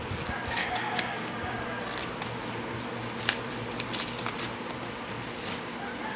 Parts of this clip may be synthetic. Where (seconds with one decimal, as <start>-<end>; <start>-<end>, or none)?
0.6-1.8